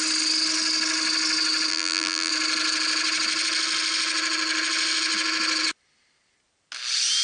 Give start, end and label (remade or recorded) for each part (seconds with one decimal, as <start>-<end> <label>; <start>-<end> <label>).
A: 0.0-1.7 recorded; 1.7-2.3 remade; 2.3-7.2 recorded